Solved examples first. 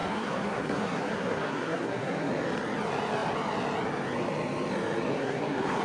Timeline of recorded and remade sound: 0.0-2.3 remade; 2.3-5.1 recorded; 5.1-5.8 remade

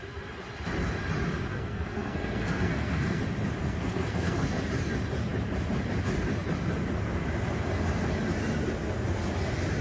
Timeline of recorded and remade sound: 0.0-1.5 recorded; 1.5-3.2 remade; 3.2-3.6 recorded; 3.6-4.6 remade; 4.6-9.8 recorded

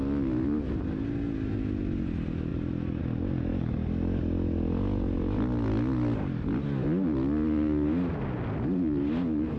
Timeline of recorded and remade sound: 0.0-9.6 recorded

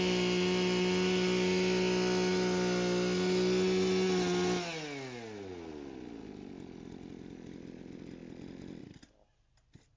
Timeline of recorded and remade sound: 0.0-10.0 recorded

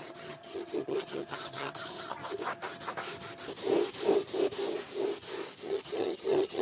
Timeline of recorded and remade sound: 0.0-2.2 remade; 2.2-5.6 recorded; 5.6-6.6 remade

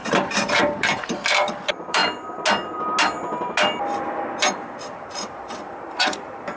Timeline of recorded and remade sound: 0.0-2.0 remade; 2.0-5.6 recorded; 5.6-6.6 remade

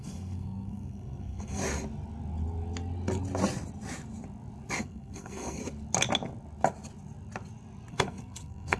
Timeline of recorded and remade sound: 0.0-1.6 remade; 1.6-4.8 recorded; 4.8-5.6 remade; 5.6-7.9 recorded; 7.9-8.8 remade